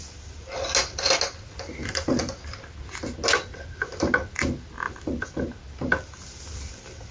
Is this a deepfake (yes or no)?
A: no